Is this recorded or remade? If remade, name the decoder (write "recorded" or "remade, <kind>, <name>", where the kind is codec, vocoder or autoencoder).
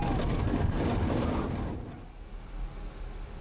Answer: recorded